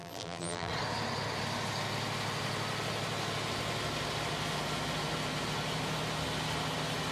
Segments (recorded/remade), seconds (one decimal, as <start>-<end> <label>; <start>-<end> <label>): 0.0-0.7 remade; 0.7-7.1 recorded